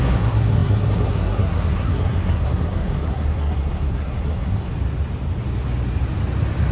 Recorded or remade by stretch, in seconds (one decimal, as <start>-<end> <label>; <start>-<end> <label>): 0.0-4.7 remade; 4.7-6.7 recorded